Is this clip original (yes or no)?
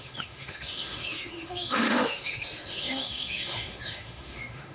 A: no